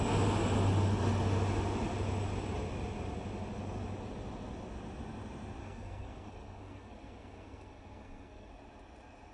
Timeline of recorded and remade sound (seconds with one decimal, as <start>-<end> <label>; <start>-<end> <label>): 0.0-5.6 recorded; 5.6-8.5 remade; 8.5-9.3 recorded